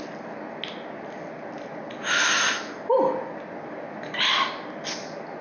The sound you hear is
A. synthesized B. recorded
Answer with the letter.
B